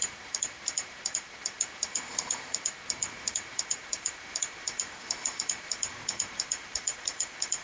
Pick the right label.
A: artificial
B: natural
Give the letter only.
A